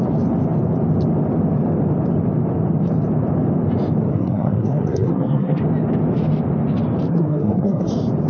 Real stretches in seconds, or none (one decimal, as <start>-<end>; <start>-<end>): 0.0-4.1; 5.6-7.1; 7.9-8.3